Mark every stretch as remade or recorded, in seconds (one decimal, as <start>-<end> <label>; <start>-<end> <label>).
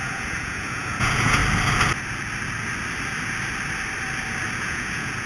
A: 0.0-1.4 remade; 1.4-4.6 recorded; 4.6-5.3 remade